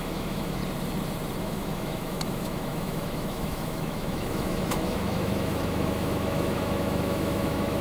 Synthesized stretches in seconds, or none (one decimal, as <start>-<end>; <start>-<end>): 0.0-0.6; 1.4-7.8